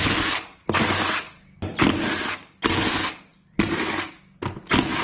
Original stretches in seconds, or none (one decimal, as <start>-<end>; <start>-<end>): 0.0-3.3; 3.9-5.0